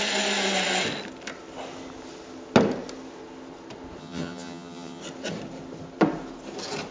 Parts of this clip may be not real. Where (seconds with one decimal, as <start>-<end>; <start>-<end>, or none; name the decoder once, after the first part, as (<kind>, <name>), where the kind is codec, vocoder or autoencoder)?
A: 4.0-5.0 (vocoder, HiFi-GAN)